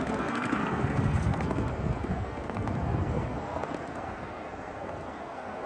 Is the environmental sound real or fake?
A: fake